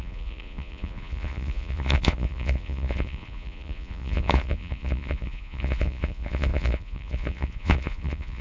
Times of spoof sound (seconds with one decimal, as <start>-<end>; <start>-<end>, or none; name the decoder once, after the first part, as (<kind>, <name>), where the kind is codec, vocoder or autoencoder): 0.0-8.4 (vocoder, Vocos)